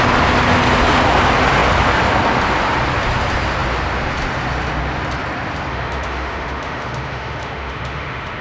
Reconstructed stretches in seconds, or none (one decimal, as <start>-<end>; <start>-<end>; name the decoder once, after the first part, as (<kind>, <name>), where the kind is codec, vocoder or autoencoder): 5.7-8.4 (autoencoder, DAC-VAE)

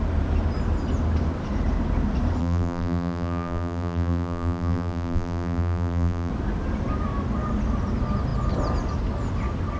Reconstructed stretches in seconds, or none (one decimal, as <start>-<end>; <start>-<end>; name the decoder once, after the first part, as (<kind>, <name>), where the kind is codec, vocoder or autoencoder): 2.4-6.3 (vocoder, BigVGAN v2)

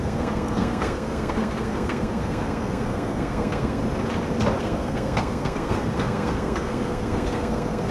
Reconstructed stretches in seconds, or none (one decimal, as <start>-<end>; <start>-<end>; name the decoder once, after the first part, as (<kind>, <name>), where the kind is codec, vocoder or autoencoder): 0.0-3.8 (codec, SNAC); 4.6-7.9

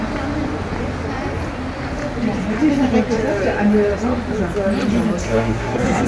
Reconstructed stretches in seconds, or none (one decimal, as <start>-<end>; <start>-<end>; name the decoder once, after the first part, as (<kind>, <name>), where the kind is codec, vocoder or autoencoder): 5.2-6.1 (codec, SNAC)

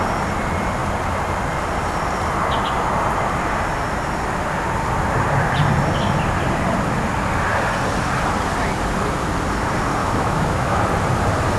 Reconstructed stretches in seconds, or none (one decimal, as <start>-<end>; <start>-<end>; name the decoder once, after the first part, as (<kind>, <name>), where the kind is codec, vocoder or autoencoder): 10.0-10.8 (autoencoder, DAC-VAE)

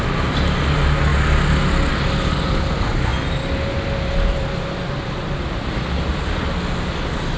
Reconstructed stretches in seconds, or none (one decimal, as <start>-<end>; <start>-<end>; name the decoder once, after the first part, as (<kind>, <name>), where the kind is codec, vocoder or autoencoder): none

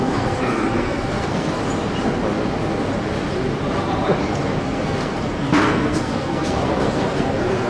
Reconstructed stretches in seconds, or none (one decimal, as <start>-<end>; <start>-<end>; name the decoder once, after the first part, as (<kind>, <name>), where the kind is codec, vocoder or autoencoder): 0.0-1.6 (codec, SNAC); 4.6-7.7

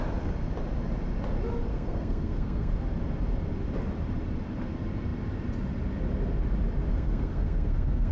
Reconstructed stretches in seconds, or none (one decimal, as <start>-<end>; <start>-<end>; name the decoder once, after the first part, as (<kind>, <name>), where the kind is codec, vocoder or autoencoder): 1.7-2.7 (codec, SNAC); 6.9-8.1